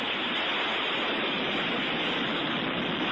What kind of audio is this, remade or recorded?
recorded